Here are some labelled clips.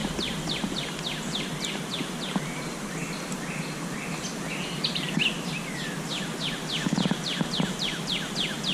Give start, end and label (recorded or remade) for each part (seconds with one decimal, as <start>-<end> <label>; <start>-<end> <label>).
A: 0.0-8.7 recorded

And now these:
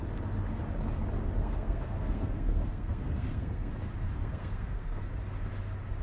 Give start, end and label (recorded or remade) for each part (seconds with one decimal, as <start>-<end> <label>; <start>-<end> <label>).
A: 0.0-1.4 recorded; 1.4-3.7 remade; 3.7-4.2 recorded; 4.2-5.1 remade; 5.1-6.0 recorded

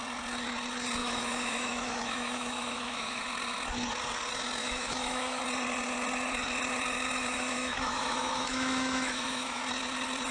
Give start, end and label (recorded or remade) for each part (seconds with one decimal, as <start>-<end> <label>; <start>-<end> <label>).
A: 0.0-1.0 recorded; 1.0-3.2 remade; 3.2-4.6 recorded; 4.6-5.4 remade; 5.4-7.2 recorded; 7.2-9.6 remade; 9.6-10.3 recorded

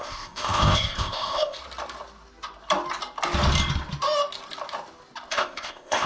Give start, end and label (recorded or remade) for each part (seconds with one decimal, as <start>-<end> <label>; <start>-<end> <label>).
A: 0.0-1.6 remade; 1.6-5.3 recorded; 5.3-6.1 remade